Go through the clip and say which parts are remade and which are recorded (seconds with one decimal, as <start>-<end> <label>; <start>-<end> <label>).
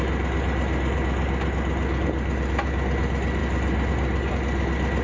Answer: 0.0-5.0 recorded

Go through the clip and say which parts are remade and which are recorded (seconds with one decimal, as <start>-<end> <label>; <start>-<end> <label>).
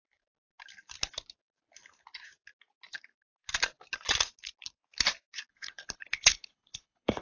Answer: 0.0-5.5 recorded; 5.5-7.2 remade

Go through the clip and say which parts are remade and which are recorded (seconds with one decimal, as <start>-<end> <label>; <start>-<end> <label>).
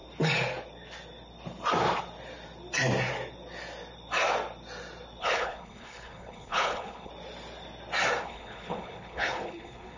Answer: 0.0-5.2 recorded; 5.2-7.1 remade; 7.1-8.2 recorded; 8.2-10.0 remade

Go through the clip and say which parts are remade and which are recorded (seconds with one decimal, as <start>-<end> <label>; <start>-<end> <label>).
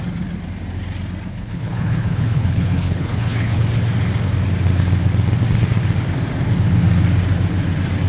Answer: 0.0-1.3 recorded; 1.3-3.6 remade; 3.6-8.1 recorded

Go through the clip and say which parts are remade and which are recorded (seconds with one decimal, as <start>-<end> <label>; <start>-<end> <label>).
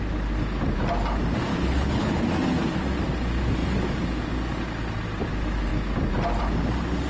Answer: 0.0-1.5 recorded; 1.5-2.2 remade; 2.2-7.1 recorded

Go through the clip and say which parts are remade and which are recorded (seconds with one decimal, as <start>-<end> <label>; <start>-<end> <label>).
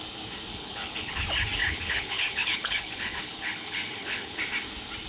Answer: 0.0-0.5 recorded; 0.5-1.2 remade; 1.2-1.6 recorded; 1.6-4.4 remade; 4.4-5.1 recorded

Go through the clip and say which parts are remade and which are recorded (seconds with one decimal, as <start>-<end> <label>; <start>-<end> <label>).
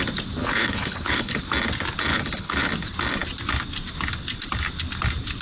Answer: 0.0-0.4 recorded; 0.4-1.4 remade; 1.4-2.1 recorded; 2.1-2.7 remade; 2.7-5.4 recorded